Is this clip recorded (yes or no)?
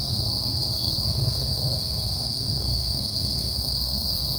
no